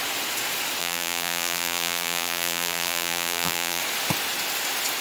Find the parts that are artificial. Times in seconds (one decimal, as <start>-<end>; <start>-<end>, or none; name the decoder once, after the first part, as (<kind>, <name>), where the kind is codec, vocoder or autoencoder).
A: 0.8-3.8 (vocoder, BigVGAN v2)

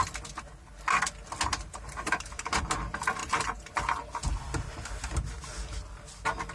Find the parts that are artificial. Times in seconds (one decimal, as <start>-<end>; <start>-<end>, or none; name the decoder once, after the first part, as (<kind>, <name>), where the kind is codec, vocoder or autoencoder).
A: 1.5-2.7 (vocoder, BigVGAN v2); 3.2-4.1

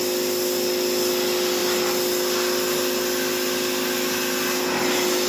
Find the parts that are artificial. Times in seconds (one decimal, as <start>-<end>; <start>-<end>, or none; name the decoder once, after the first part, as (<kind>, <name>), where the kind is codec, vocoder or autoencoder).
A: none

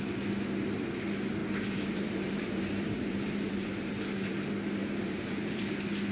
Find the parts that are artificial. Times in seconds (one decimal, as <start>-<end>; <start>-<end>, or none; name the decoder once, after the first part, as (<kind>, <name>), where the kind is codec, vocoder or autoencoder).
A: 1.4-4.3 (vocoder, BigVGAN v2); 4.8-5.6